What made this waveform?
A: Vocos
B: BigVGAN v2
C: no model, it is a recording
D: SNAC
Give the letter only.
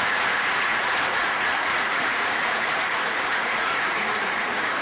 A